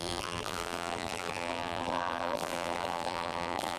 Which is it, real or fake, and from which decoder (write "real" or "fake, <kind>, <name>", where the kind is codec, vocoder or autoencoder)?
fake, vocoder, BigVGAN v2